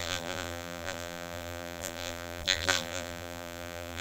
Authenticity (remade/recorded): remade